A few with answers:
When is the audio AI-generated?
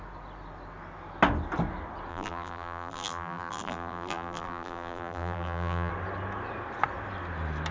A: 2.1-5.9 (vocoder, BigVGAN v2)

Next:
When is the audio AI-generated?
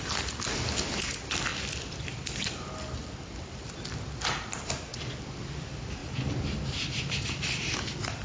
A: 4.9-5.6 (vocoder, BigVGAN v2)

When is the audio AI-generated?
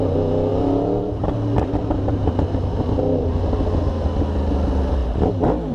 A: 0.5-3.0 (vocoder, BigVGAN v2)